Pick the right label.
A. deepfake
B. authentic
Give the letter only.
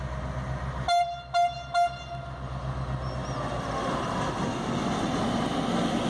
B